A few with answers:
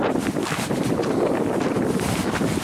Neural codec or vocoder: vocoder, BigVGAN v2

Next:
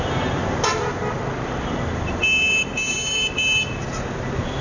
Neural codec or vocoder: none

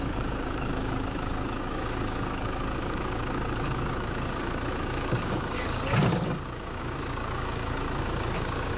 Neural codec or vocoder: codec, DAC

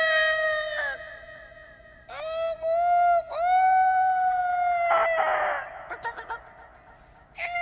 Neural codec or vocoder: none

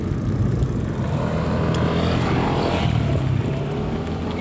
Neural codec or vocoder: none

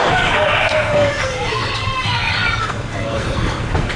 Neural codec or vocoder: codec, SNAC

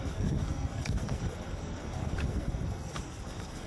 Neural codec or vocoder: codec, SNAC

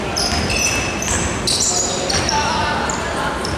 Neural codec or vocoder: none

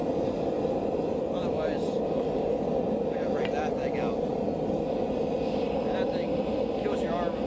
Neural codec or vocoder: none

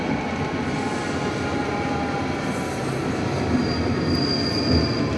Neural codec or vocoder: none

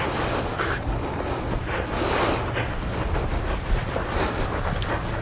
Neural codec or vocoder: none